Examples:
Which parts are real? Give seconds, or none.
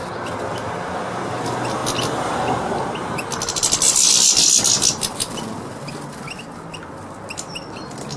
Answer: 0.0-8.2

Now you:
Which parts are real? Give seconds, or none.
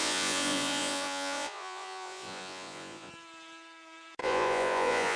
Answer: 3.1-4.2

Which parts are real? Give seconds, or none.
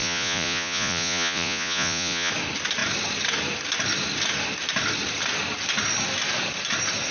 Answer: 2.3-7.1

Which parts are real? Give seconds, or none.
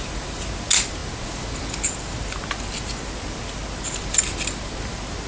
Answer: 0.0-5.3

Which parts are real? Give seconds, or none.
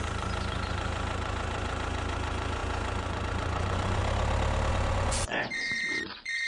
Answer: 4.0-4.7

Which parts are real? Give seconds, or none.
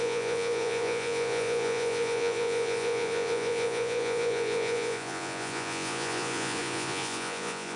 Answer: none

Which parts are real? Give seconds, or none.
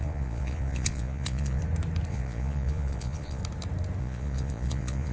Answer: 1.6-2.1; 3.4-4.0